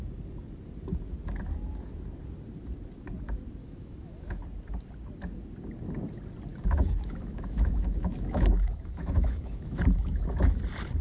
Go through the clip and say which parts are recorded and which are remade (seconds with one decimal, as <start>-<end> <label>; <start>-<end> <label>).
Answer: 0.0-3.6 recorded; 3.6-4.4 remade; 4.4-6.5 recorded; 6.5-10.6 remade; 10.6-11.0 recorded